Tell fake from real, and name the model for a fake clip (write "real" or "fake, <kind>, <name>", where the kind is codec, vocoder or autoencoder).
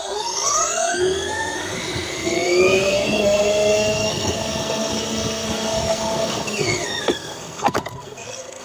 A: fake, codec, SNAC